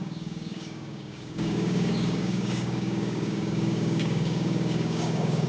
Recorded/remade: remade